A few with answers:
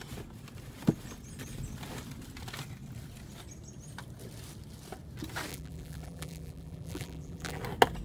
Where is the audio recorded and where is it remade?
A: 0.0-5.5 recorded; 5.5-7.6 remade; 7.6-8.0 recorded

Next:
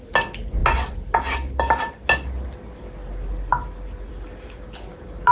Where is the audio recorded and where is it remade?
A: 0.0-5.3 recorded

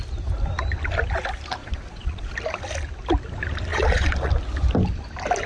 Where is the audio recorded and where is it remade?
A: 0.0-1.6 recorded; 1.6-2.3 remade; 2.3-3.7 recorded; 3.7-4.3 remade; 4.3-5.5 recorded

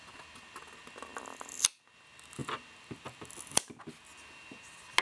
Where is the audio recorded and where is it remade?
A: 0.0-5.0 recorded

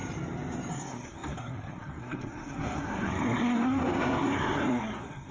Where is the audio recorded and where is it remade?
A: 0.0-0.7 recorded; 0.7-5.3 remade